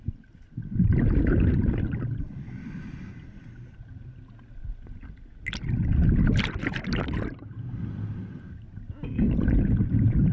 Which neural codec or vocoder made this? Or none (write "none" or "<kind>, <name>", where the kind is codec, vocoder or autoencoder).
none